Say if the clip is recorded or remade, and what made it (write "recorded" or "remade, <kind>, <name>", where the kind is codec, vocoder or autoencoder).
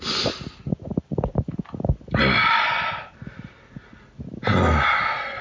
recorded